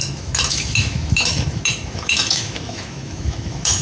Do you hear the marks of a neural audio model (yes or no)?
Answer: yes